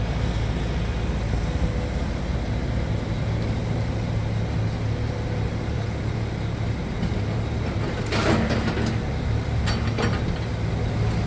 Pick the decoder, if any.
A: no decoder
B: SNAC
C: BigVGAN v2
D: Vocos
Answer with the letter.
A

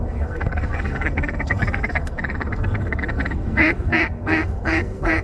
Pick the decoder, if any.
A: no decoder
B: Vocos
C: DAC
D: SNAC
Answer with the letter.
D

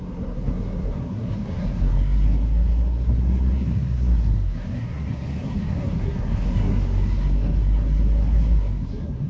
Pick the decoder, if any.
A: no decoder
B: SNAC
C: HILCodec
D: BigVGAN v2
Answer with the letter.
B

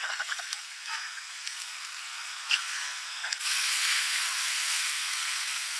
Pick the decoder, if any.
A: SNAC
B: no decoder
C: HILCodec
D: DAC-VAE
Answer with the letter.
A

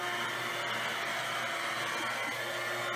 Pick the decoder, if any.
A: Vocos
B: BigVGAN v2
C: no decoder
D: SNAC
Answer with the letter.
C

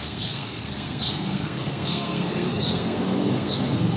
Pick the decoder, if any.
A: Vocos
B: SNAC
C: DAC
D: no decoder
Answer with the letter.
B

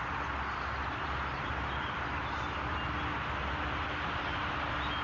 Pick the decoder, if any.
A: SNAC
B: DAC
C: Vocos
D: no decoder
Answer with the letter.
D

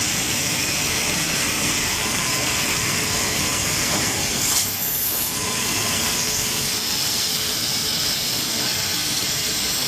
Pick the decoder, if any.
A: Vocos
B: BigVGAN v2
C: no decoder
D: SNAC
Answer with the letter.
D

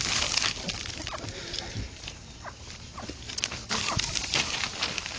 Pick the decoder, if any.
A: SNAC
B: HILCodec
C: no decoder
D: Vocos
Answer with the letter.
C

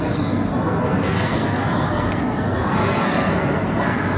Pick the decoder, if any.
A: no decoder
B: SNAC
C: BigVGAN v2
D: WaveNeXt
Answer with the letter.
B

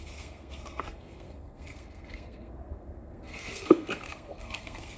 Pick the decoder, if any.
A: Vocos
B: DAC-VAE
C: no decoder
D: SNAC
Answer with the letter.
D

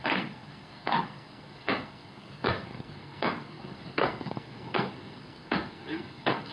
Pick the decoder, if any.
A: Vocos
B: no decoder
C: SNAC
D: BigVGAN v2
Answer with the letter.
C